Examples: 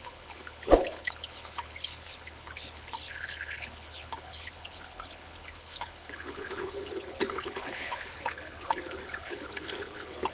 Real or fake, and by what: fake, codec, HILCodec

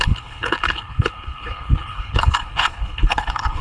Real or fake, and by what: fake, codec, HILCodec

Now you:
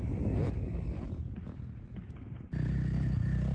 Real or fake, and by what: real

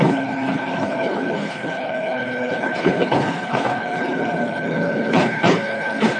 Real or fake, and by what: fake, codec, HILCodec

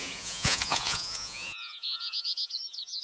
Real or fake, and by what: fake, vocoder, Vocos